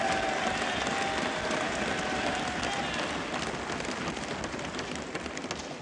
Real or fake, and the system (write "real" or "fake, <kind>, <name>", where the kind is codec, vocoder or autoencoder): real